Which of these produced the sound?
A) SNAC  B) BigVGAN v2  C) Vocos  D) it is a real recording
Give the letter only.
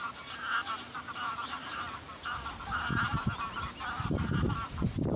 D